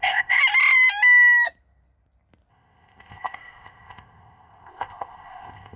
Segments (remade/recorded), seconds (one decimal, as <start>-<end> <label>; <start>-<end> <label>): 0.0-0.4 remade; 0.4-2.5 recorded; 2.5-5.8 remade

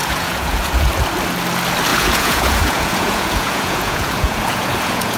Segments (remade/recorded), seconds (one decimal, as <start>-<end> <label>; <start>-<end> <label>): 0.0-0.9 remade; 0.9-1.9 recorded; 1.9-5.2 remade

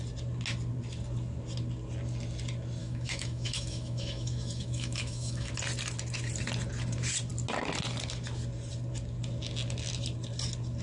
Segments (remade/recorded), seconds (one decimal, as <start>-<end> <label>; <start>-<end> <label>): 0.0-2.8 recorded; 2.8-5.5 remade; 5.5-10.8 recorded

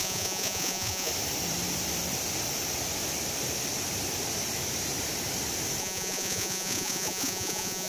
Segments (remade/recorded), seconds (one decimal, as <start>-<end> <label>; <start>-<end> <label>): 0.0-1.1 remade; 1.1-5.8 recorded; 5.8-7.9 remade

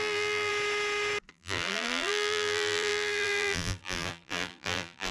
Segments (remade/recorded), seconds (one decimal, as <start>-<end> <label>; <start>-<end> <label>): 0.0-0.5 remade; 0.5-1.3 recorded; 1.3-5.1 remade

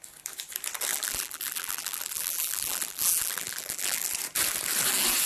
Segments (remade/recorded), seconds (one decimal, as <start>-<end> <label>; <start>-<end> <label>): 0.0-0.9 recorded; 0.9-4.1 remade; 4.1-5.3 recorded

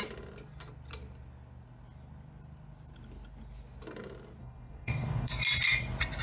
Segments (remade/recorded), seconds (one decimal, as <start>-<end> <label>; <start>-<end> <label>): 0.0-4.4 recorded; 4.4-5.3 remade; 5.3-6.2 recorded